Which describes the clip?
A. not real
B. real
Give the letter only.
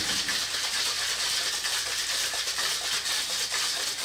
B